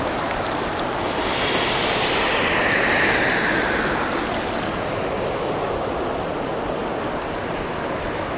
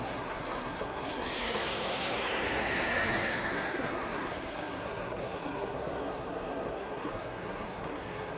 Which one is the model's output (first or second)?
second